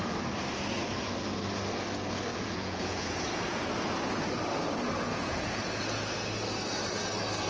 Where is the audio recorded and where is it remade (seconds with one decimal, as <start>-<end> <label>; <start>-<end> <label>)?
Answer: 0.0-2.3 recorded; 2.3-3.7 remade; 3.7-5.1 recorded; 5.1-6.1 remade; 6.1-7.5 recorded